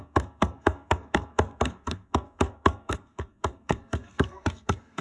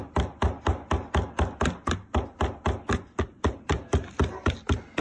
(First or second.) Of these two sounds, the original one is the second